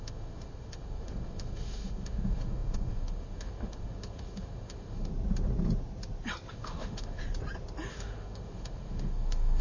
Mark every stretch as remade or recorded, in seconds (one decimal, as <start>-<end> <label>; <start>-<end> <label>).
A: 0.0-5.1 remade; 5.1-6.5 recorded; 6.5-7.2 remade; 7.2-7.9 recorded; 7.9-9.6 remade